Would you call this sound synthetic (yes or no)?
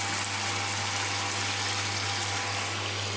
no